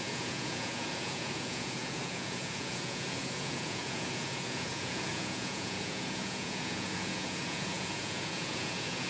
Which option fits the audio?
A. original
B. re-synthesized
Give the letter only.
B